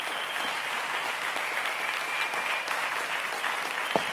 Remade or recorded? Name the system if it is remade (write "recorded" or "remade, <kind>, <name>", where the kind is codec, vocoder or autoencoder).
recorded